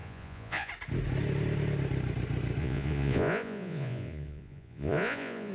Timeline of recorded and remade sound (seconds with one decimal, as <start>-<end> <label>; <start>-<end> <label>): 0.0-0.7 remade; 0.7-2.6 recorded; 2.6-5.5 remade